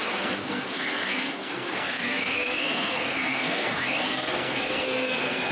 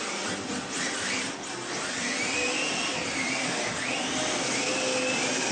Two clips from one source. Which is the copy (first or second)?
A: first